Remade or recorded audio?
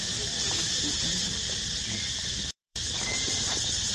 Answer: remade